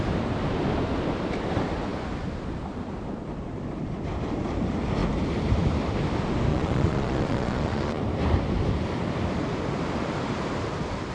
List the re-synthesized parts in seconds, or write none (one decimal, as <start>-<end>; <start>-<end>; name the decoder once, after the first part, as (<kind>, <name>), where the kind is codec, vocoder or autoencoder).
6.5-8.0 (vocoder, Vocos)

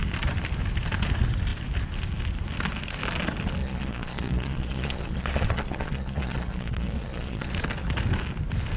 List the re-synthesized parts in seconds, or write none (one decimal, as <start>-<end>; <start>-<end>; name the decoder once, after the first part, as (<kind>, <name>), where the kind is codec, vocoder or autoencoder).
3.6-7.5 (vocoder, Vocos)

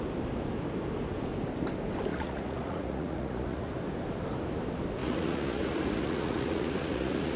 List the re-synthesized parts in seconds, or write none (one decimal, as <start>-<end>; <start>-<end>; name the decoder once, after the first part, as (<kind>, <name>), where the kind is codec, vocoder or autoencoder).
2.1-3.7 (vocoder, Vocos); 5.0-7.4

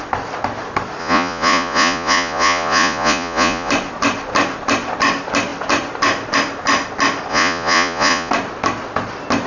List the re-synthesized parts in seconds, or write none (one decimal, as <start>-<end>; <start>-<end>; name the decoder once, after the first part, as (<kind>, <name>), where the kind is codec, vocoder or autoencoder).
1.0-3.7 (vocoder, Vocos); 7.3-8.3